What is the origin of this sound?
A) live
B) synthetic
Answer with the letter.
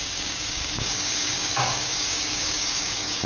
B